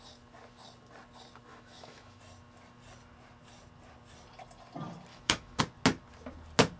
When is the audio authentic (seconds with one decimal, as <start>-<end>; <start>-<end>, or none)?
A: 0.0-1.5; 2.2-5.1; 5.6-6.8